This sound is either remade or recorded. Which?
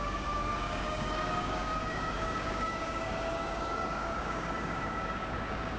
remade